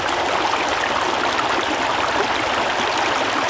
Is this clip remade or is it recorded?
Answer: recorded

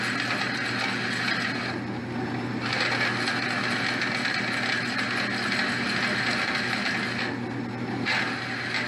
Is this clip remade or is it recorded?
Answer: recorded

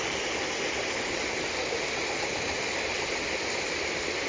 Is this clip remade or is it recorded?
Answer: recorded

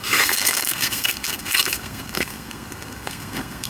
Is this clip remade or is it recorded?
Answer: remade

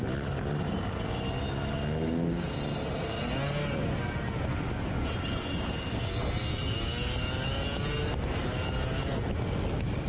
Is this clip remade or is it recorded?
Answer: recorded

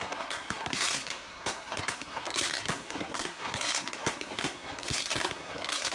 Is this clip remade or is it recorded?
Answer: remade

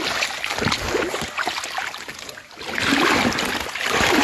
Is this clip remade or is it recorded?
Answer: recorded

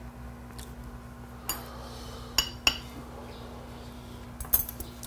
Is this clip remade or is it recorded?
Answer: recorded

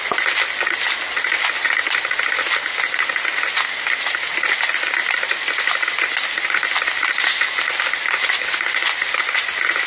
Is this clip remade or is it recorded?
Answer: recorded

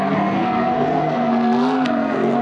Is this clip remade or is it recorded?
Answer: remade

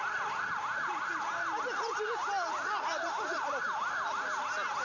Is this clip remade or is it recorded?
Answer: recorded